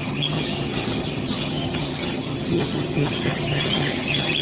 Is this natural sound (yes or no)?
no